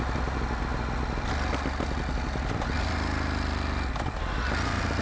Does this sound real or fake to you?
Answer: real